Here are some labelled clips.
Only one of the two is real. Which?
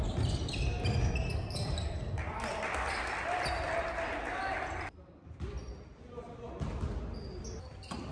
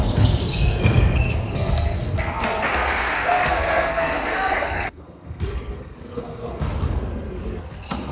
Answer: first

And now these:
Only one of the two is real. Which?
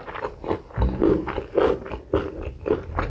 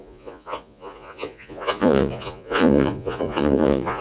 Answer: first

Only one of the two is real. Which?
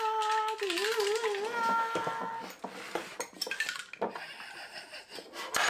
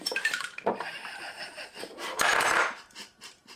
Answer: first